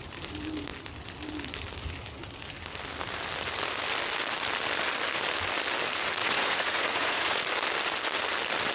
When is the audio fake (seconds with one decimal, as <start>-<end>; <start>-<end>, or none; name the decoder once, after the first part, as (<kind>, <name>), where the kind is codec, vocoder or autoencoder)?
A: 6.2-7.4 (vocoder, Vocos)